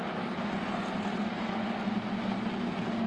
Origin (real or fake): real